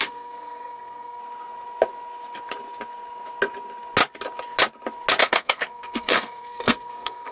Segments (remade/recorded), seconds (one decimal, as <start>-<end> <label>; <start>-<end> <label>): 0.0-1.2 remade; 1.2-5.2 recorded; 5.2-7.3 remade